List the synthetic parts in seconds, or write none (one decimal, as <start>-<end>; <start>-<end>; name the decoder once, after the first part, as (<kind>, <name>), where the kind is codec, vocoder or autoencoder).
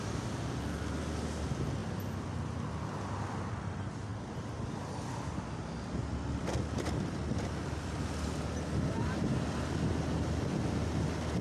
6.4-7.1 (vocoder, BigVGAN v2)